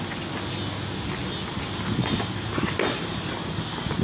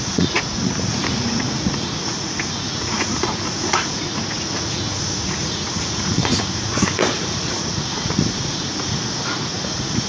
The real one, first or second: first